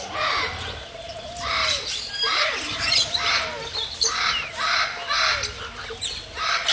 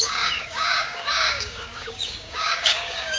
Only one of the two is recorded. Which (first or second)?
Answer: first